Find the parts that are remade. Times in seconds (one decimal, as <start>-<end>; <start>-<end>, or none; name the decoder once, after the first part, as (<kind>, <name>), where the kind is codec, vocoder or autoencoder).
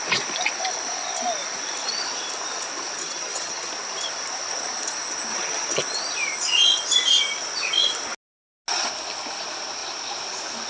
3.0-3.7 (vocoder, HiFi-GAN); 5.3-5.8